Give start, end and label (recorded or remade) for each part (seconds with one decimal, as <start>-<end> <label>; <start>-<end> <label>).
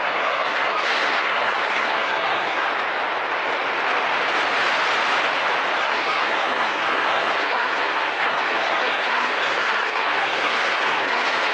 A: 0.0-2.7 remade; 2.7-5.8 recorded; 5.8-11.5 remade